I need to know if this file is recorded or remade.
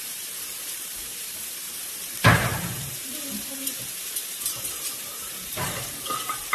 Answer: remade